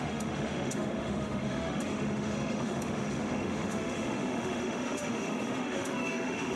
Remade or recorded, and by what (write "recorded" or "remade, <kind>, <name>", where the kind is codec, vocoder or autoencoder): remade, autoencoder, DAC-VAE